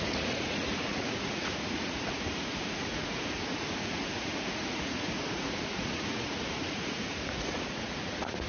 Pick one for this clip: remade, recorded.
remade